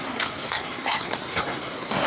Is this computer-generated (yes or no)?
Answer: yes